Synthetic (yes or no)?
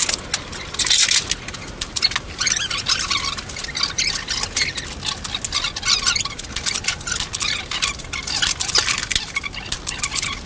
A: no